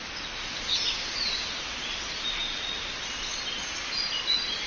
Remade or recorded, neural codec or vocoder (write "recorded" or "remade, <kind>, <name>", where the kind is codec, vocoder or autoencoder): recorded